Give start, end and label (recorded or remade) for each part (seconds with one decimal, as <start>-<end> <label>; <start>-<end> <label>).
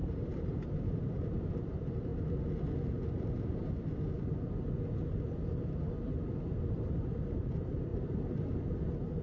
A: 0.0-2.1 remade; 2.1-7.3 recorded; 7.3-9.2 remade